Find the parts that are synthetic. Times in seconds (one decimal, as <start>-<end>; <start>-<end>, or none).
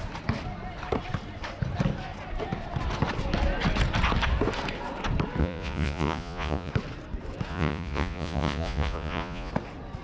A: 5.4-6.7; 7.5-9.5